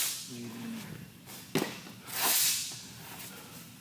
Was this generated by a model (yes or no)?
no